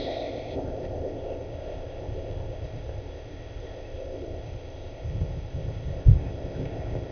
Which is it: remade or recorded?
remade